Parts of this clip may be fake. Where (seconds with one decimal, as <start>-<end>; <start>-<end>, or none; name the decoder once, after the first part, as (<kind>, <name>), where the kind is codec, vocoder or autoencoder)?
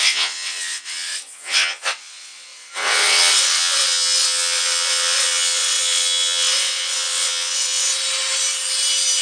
0.0-7.9 (vocoder, WaveNeXt)